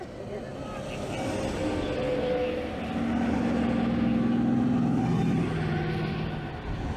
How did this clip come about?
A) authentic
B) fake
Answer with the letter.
A